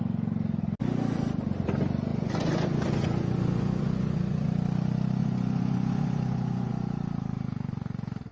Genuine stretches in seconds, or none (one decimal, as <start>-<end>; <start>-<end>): 0.0-2.1; 4.5-5.2; 6.7-8.3